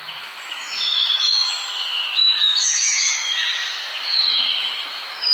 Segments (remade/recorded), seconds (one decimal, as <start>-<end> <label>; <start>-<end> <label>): 0.0-5.3 remade